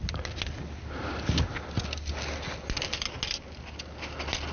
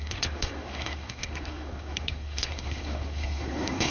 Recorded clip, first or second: first